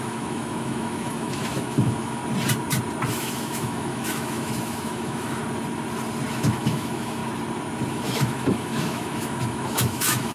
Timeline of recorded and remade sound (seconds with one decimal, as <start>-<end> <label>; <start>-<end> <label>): 0.0-2.2 remade; 2.2-3.1 recorded; 3.1-5.4 remade; 5.4-6.3 recorded; 6.3-7.2 remade; 7.2-7.9 recorded; 7.9-10.3 remade